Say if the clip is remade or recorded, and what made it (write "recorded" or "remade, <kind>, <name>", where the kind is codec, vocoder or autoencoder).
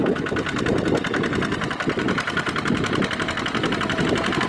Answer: recorded